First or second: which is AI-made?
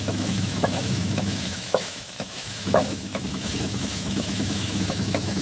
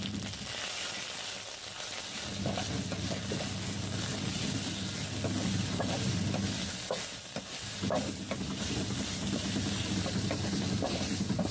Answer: first